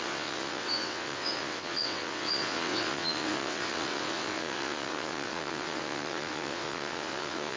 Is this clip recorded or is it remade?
remade